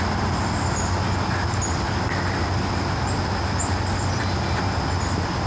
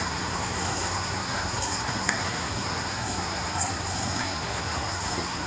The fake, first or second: second